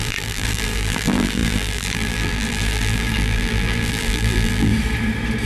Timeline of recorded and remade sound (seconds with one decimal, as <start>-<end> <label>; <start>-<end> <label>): 0.0-4.7 remade; 4.7-5.5 recorded